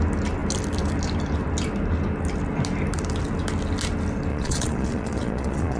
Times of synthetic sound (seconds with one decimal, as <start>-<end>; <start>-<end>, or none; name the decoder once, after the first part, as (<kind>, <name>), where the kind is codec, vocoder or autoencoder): 4.3-5.8 (vocoder, Vocos)